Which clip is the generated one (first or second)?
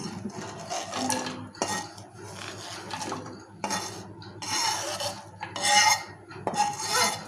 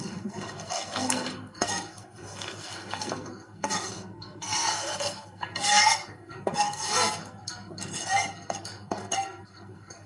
second